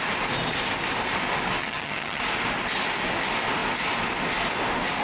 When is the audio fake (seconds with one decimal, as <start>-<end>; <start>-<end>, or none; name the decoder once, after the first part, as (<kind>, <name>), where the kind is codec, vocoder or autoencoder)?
1.6-2.2 (vocoder, HiFi-GAN)